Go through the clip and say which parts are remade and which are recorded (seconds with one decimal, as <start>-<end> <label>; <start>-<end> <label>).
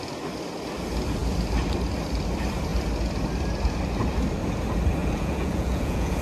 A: 0.0-5.0 recorded; 5.0-6.2 remade